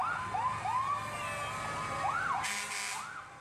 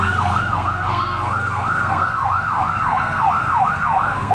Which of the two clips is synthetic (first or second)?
second